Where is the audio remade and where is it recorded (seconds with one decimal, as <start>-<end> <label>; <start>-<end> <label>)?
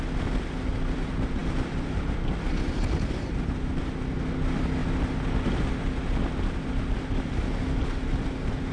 0.0-8.7 recorded